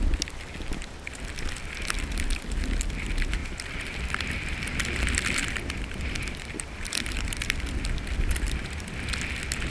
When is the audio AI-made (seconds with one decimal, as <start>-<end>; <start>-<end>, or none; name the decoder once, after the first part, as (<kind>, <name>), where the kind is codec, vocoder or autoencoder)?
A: 3.4-8.5 (vocoder, BigVGAN v2)